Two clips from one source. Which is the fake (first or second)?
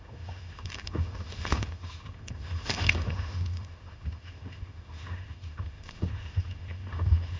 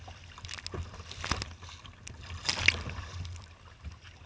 first